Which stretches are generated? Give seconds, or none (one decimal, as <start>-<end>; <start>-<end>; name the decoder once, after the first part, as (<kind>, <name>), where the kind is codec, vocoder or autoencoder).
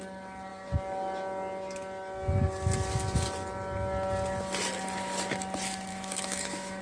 5.9-6.8 (autoencoder, DAC-VAE)